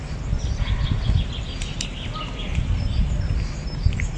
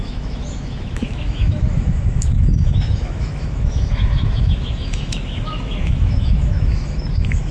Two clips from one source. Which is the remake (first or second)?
second